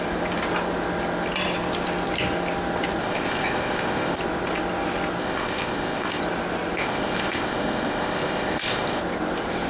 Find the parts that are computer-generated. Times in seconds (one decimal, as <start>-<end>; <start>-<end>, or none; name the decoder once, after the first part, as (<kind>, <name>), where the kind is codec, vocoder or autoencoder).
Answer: 3.0-4.2 (codec, ZipCodec); 5.2-6.2; 6.8-9.0